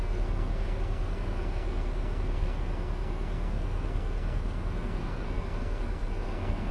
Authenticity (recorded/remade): remade